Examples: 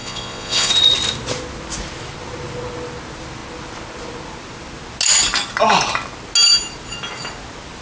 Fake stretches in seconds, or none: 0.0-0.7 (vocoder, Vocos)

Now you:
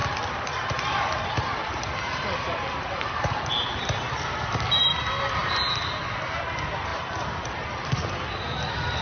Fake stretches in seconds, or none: 0.0-3.5 (vocoder, BigVGAN v2); 6.9-8.1

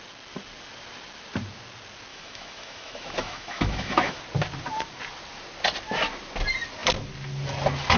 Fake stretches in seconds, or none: 2.1-4.2 (autoencoder, DAC-VAE)

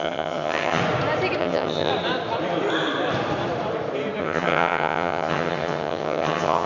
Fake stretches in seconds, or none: 0.0-0.8 (vocoder, HiFi-GAN); 1.4-1.9; 4.2-6.7

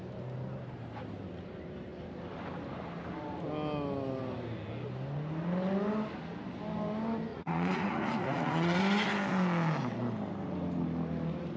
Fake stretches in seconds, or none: 7.3-8.8 (vocoder, Vocos)